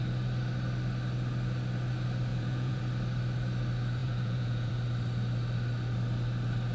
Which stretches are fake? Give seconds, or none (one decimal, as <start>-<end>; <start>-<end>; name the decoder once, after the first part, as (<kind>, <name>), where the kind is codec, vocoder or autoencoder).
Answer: 2.3-2.8 (vocoder, Vocos); 4.0-4.7